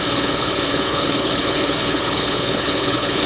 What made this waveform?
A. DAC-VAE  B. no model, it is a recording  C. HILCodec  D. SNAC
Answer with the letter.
C